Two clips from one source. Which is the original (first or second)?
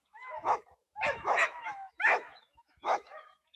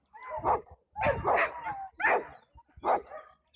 second